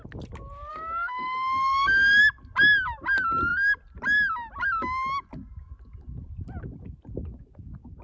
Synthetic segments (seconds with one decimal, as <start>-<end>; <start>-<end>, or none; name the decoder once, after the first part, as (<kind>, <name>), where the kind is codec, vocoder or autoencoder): 0.7-2.2 (codec, DAC)